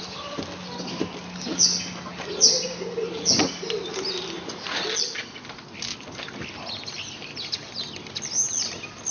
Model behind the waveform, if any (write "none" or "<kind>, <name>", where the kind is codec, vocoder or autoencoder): none